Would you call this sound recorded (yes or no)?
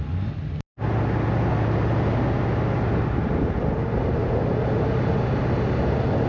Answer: yes